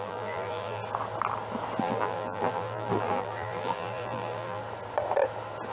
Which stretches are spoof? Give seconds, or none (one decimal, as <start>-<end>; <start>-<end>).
0.0-0.8; 1.8-4.6